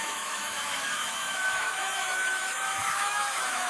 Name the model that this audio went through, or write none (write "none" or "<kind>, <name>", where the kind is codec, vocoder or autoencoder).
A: autoencoder, DAC-VAE